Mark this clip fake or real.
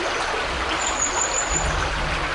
real